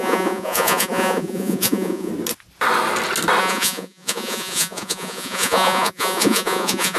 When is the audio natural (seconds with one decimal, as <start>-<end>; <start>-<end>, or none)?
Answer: 2.1-3.4